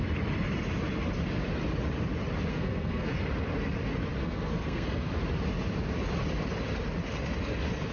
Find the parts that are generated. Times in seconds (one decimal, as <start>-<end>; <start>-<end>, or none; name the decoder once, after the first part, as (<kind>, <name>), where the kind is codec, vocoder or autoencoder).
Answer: 2.5-3.1 (codec, SNAC); 4.2-5.1